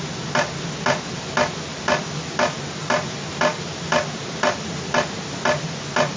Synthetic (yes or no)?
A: no